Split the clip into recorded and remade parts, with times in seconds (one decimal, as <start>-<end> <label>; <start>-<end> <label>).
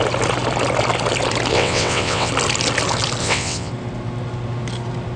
0.0-1.5 recorded; 1.5-2.3 remade; 2.3-3.2 recorded; 3.2-3.7 remade; 3.7-5.2 recorded